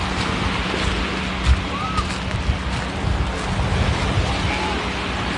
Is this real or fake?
real